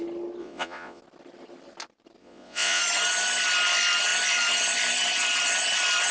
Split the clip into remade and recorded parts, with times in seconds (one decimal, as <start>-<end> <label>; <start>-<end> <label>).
0.0-0.4 recorded; 0.4-1.0 remade; 1.0-2.2 recorded; 2.2-2.8 remade; 2.8-6.1 recorded